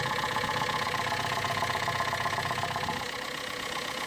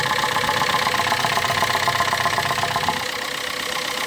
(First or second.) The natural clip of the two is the second